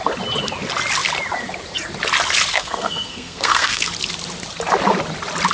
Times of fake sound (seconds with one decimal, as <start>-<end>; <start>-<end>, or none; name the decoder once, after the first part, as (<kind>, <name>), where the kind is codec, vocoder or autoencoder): 2.5-3.9 (codec, SNAC)